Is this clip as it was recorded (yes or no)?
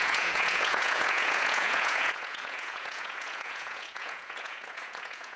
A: no